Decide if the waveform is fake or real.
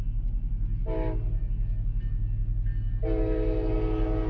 real